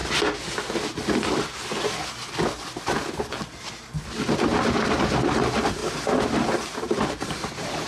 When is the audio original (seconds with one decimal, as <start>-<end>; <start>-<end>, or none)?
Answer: 0.0-5.8

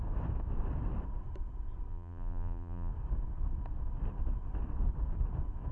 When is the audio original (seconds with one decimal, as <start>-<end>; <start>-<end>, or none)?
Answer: 0.0-1.9; 2.9-5.7

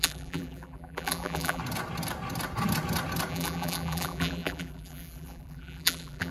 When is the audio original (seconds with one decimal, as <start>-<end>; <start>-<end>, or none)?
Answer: 1.6-3.3

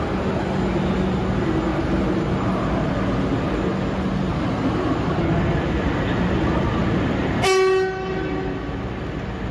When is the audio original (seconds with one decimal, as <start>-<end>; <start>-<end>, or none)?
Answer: 0.0-1.7; 2.2-9.5

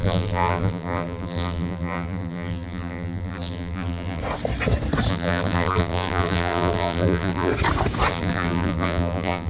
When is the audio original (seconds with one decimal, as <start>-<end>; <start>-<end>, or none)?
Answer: 4.2-5.1; 7.5-8.1